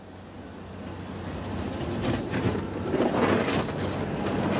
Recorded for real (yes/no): yes